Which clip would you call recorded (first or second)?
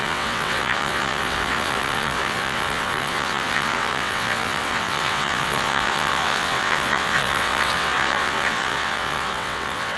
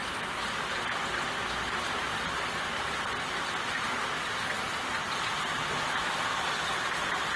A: second